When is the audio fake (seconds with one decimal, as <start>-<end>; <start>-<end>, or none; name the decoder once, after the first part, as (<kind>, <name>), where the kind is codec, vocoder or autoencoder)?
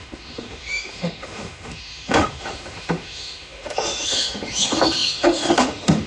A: 0.0-6.1 (autoencoder, DAC-VAE)